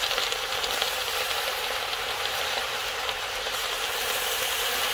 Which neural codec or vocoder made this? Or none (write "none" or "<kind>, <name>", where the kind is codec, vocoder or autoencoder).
vocoder, BigVGAN v2